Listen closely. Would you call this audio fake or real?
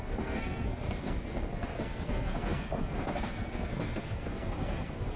fake